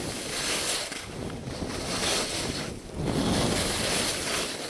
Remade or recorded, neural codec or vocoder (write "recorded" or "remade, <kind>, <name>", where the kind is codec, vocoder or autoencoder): recorded